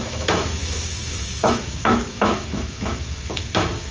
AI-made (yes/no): yes